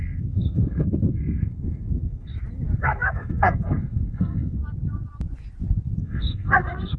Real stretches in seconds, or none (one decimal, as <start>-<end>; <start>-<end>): 2.3-2.8; 4.6-6.0